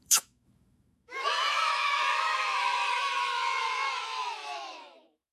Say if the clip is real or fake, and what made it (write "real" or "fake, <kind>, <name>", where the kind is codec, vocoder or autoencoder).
fake, autoencoder, DAC-VAE